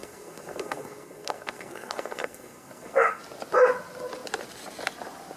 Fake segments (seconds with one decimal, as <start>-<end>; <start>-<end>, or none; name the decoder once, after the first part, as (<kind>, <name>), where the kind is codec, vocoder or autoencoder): 0.0-3.2 (codec, SNAC)